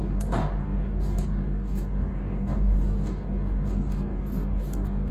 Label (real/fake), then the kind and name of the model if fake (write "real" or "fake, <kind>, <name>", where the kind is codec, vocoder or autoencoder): fake, codec, DAC